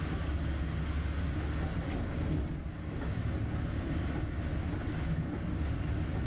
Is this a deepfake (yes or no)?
no